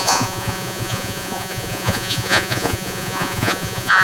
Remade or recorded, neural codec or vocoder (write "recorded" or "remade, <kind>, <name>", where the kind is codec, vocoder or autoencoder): remade, vocoder, Vocos